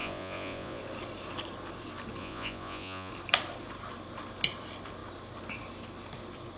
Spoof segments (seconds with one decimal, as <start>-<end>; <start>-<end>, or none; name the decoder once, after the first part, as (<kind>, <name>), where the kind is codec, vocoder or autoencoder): 0.0-0.8 (vocoder, Vocos); 2.2-3.1